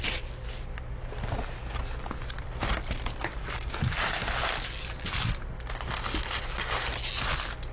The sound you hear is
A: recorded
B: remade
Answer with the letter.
A